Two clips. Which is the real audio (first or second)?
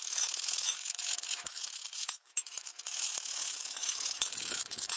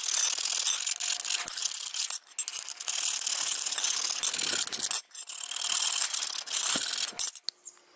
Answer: second